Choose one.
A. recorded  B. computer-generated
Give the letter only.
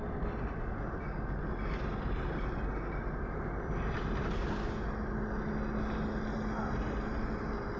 A